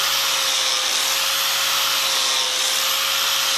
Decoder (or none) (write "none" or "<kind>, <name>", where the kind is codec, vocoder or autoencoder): none